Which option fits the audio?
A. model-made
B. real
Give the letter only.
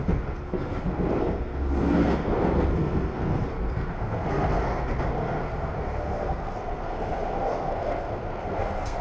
A